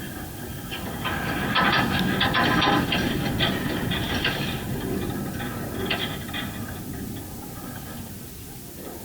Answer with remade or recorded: recorded